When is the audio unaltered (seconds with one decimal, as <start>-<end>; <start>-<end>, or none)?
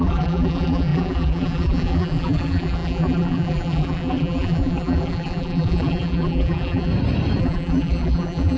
6.9-7.4